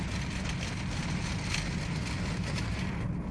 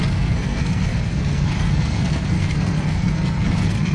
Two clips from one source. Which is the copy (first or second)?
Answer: second